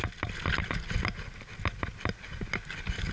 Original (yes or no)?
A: yes